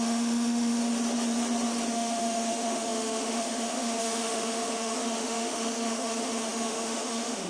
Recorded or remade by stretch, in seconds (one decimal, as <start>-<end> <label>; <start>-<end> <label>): 0.0-0.8 remade; 0.8-1.9 recorded; 1.9-7.5 remade